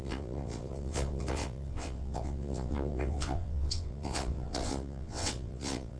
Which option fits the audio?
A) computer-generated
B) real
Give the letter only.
A